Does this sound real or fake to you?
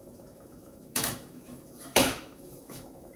fake